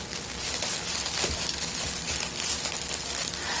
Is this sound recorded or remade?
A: recorded